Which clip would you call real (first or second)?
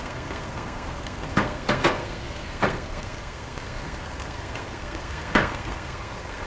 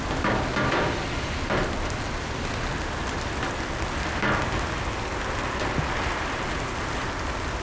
second